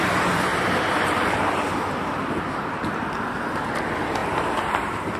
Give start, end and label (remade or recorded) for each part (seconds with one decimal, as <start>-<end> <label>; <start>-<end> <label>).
0.0-0.5 recorded; 0.5-1.6 remade; 1.6-4.2 recorded; 4.2-4.7 remade; 4.7-5.2 recorded